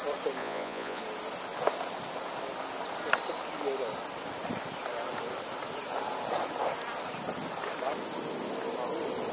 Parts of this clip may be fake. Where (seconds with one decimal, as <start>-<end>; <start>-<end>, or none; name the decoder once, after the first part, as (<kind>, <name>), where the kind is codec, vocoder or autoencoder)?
0.4-1.0 (vocoder, Vocos)